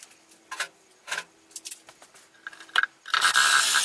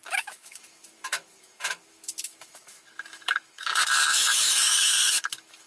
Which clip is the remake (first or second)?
second